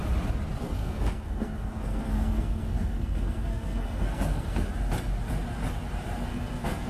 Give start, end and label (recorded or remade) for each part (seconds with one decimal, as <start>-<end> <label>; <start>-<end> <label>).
0.0-0.6 recorded; 0.6-4.7 remade; 4.7-6.3 recorded; 6.3-6.9 remade

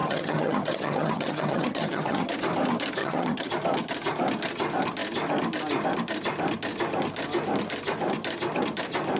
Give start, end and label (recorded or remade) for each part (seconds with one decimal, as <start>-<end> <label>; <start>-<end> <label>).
0.0-2.3 remade; 2.3-3.0 recorded; 3.0-3.5 remade; 3.5-9.2 recorded

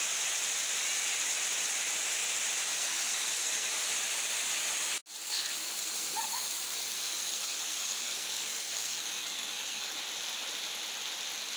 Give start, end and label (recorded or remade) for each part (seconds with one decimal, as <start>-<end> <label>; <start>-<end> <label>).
0.0-2.7 recorded; 2.7-3.7 remade; 3.7-5.2 recorded; 5.2-9.9 remade; 9.9-11.6 recorded

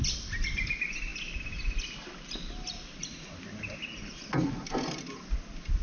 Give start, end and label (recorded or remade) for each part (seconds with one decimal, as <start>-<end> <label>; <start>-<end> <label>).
0.0-5.8 recorded

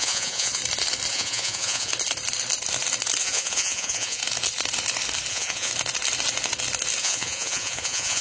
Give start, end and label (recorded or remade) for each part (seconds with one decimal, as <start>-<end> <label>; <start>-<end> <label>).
0.0-0.6 remade; 0.6-1.1 recorded; 1.1-1.9 remade; 1.9-3.2 recorded; 3.2-4.2 remade; 4.2-5.3 recorded; 5.3-5.7 remade; 5.7-7.0 recorded; 7.0-8.2 remade

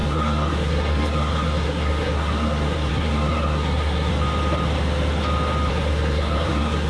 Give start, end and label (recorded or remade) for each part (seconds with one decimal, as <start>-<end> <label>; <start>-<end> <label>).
0.0-4.1 remade; 4.1-5.7 recorded; 5.7-6.9 remade

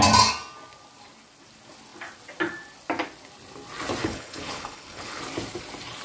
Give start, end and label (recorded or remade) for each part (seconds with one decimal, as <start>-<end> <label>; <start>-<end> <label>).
0.0-4.0 recorded; 4.0-5.2 remade; 5.2-6.0 recorded

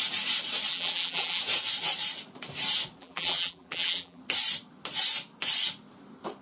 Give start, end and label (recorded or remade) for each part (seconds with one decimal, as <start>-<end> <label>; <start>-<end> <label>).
0.0-0.7 recorded; 0.7-1.4 remade; 1.4-3.0 recorded; 3.0-4.2 remade; 4.2-6.4 recorded